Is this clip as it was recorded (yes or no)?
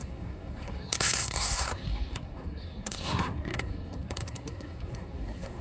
no